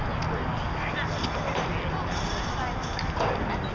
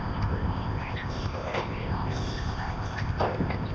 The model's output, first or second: second